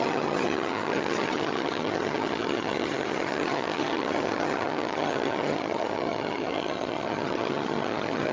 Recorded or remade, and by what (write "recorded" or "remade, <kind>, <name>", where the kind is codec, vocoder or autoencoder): remade, vocoder, HiFi-GAN